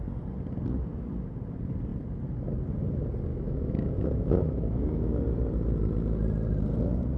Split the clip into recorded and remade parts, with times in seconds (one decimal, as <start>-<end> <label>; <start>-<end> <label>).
0.0-3.3 recorded; 3.3-5.2 remade; 5.2-7.2 recorded